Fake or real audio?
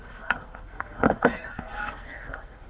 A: fake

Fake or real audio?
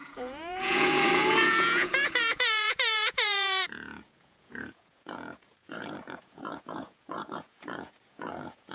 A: fake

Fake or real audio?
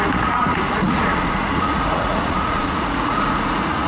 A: fake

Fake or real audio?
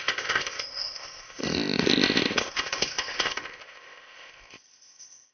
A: fake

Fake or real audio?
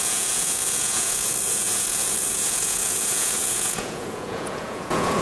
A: fake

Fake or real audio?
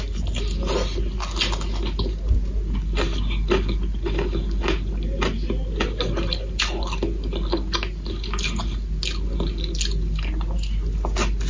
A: real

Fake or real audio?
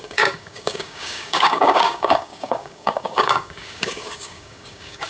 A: fake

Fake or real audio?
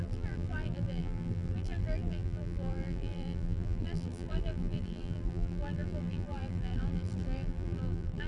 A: fake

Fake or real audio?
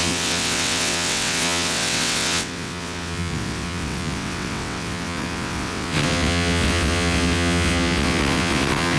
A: fake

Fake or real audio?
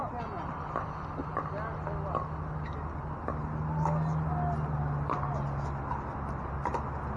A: real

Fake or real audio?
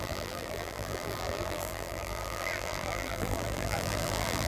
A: fake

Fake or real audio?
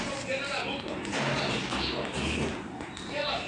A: real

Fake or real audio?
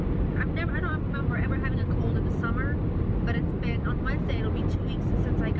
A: real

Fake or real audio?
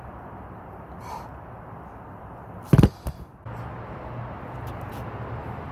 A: real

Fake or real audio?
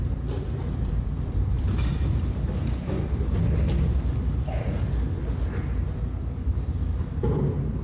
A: real